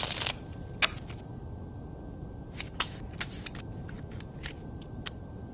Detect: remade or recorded recorded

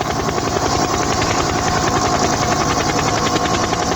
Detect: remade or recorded recorded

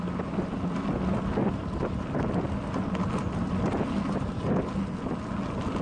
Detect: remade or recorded recorded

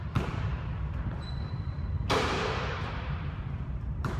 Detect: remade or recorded remade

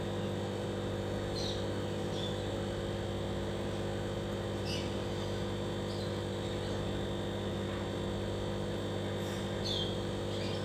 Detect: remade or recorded recorded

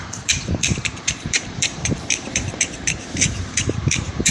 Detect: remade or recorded remade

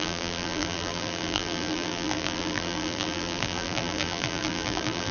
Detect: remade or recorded remade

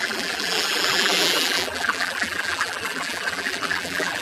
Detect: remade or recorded remade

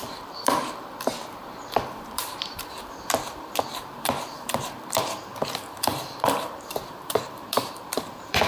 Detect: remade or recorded remade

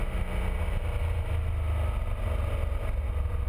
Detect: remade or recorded recorded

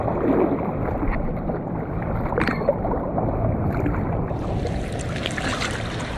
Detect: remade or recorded recorded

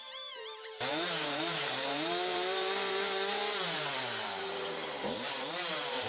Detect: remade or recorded remade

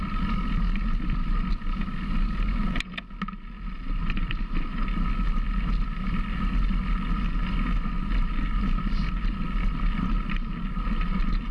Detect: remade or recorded recorded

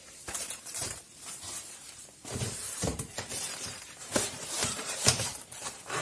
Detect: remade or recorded remade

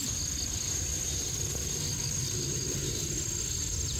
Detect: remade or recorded recorded